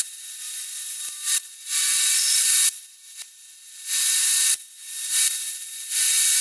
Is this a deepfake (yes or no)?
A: yes